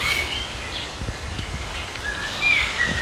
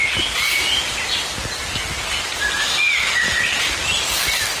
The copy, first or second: first